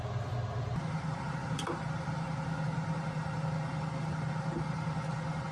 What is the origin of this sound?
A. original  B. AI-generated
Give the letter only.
A